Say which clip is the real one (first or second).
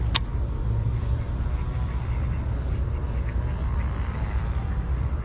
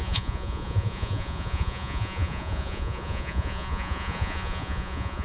first